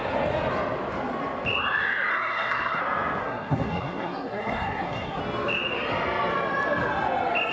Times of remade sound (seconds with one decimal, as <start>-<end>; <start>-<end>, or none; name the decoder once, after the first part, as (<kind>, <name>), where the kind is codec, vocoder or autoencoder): 2.1-2.8 (codec, SNAC); 3.2-5.2